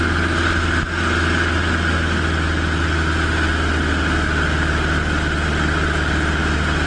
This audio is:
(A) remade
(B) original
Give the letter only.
B